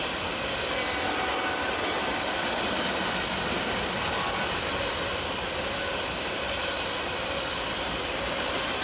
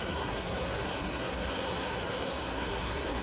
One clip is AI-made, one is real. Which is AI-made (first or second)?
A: second